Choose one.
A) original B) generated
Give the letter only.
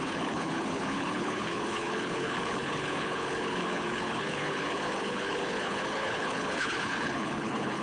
B